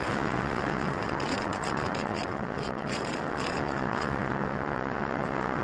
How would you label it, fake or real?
fake